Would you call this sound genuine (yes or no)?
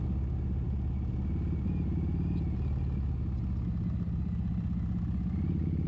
yes